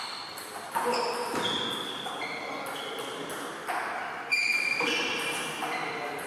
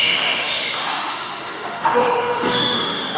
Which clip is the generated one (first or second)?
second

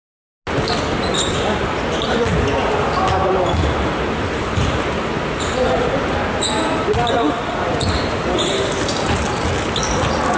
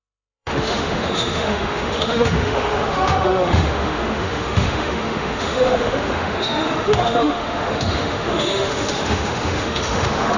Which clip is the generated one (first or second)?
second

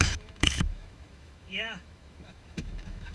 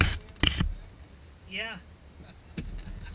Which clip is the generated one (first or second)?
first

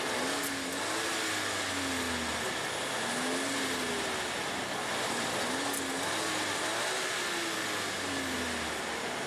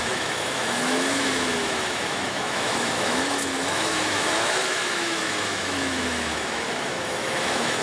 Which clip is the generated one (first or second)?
second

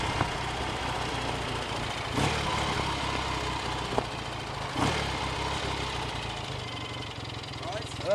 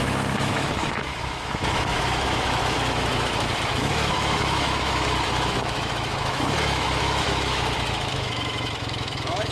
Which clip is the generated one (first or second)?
second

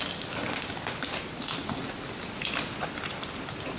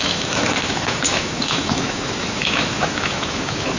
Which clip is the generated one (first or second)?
second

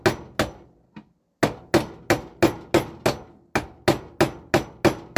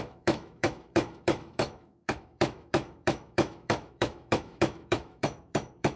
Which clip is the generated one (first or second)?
second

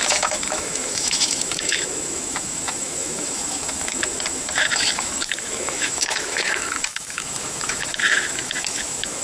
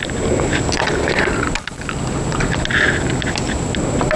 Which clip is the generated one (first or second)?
first